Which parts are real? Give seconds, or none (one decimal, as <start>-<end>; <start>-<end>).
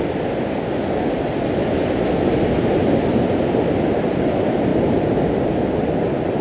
0.0-6.4